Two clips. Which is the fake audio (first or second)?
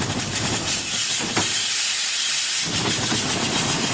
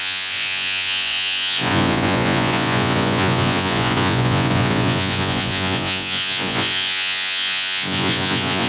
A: second